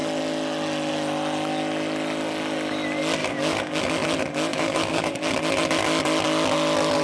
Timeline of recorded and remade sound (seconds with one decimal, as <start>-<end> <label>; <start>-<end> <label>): 0.0-3.2 recorded; 3.2-3.8 remade; 3.8-4.5 recorded; 4.5-5.3 remade; 5.3-7.0 recorded